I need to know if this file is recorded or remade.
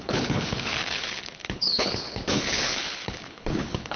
remade